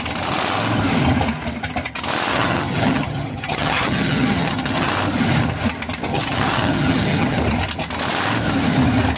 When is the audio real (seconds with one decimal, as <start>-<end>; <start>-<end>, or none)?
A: 0.0-2.3; 4.9-6.1; 7.4-9.2